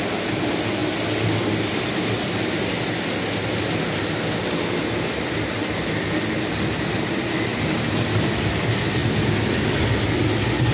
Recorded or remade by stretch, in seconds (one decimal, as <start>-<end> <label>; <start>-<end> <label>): 0.0-10.7 recorded